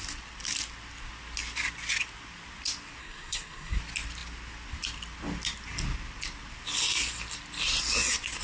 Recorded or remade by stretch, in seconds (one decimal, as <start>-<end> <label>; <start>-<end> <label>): 0.0-3.0 recorded; 3.0-3.8 remade; 3.8-8.4 recorded